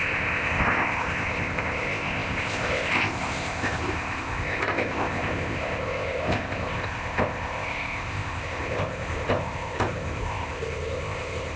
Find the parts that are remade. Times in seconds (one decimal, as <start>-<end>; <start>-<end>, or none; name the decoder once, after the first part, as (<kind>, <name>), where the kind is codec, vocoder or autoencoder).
0.0-11.6 (codec, ZipCodec)